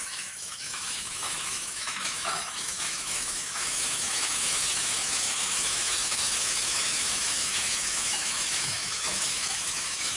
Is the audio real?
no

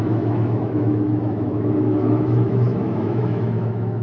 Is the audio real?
no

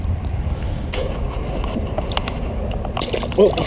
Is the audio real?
yes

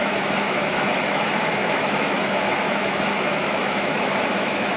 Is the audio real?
no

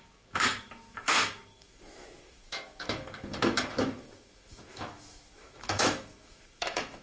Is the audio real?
no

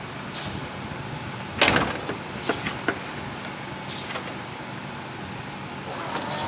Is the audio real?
yes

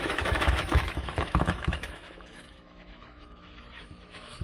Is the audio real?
no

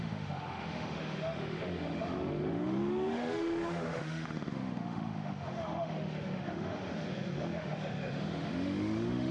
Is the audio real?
no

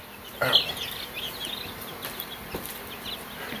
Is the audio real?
yes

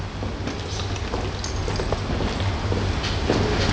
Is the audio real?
yes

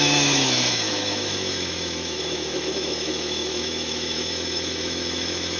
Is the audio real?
no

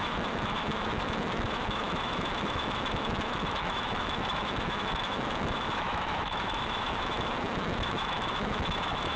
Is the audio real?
no